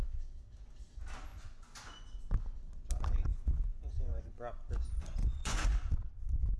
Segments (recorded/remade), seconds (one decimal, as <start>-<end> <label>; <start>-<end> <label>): 0.0-1.3 recorded; 1.3-2.4 remade; 2.4-3.3 recorded; 3.3-4.4 remade; 4.4-5.2 recorded; 5.2-5.9 remade; 5.9-6.6 recorded